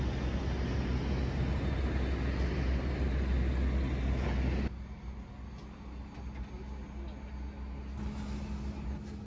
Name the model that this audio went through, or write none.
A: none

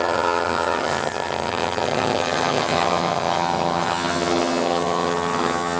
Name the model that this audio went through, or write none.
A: vocoder, HiFi-GAN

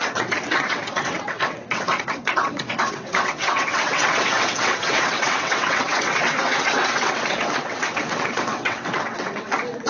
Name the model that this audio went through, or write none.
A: vocoder, WaveNeXt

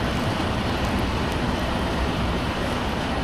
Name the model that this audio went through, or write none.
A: vocoder, BigVGAN v2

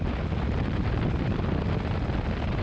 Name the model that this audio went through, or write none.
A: none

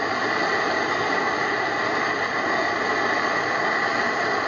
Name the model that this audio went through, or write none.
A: none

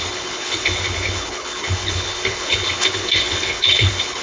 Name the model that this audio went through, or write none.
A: codec, HILCodec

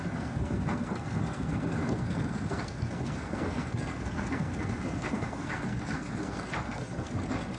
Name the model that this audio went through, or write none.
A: codec, SNAC